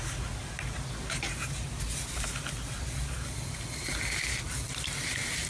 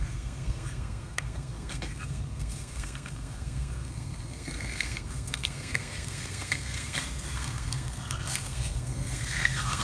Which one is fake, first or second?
second